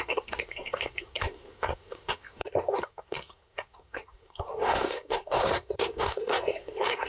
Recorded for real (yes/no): no